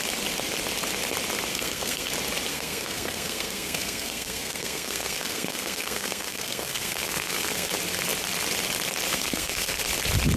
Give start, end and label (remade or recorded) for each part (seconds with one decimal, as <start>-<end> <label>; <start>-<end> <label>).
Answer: 0.0-1.5 recorded; 1.5-2.1 remade; 2.1-2.5 recorded; 2.5-7.7 remade; 7.7-9.1 recorded; 9.1-9.8 remade; 9.8-10.4 recorded